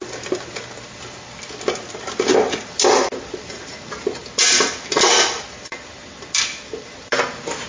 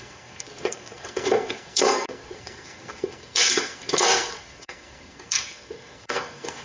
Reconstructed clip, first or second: second